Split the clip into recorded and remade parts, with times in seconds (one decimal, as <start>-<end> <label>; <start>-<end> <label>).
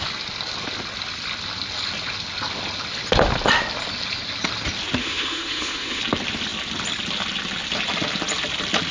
0.0-5.0 recorded; 5.0-6.0 remade; 6.0-8.9 recorded